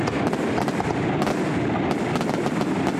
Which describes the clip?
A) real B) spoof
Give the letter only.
A